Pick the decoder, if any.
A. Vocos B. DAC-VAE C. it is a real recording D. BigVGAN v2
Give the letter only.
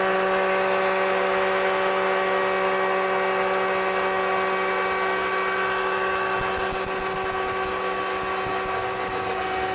C